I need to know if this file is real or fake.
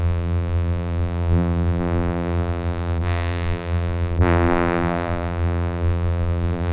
fake